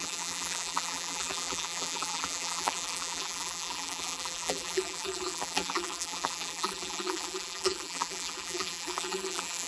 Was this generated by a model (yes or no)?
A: yes